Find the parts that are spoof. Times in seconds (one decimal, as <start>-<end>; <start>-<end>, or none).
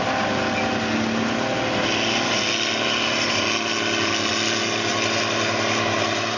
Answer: none